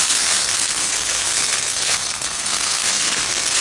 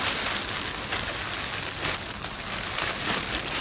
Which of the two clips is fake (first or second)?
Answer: first